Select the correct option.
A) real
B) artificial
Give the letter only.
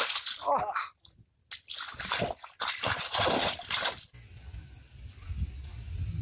A